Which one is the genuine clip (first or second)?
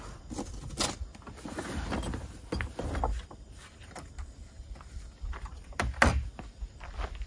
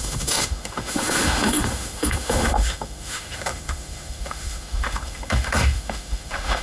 first